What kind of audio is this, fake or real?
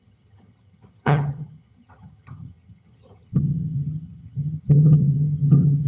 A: fake